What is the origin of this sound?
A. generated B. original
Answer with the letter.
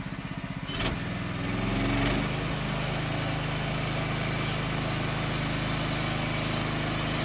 B